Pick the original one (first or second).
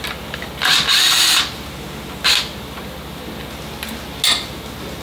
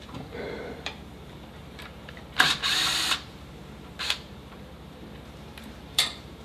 first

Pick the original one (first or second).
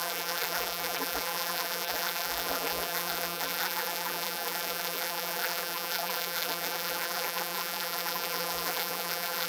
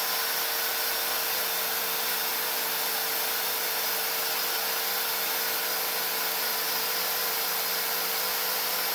second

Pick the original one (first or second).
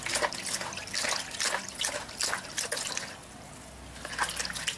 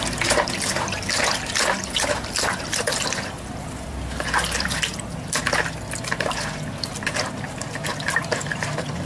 first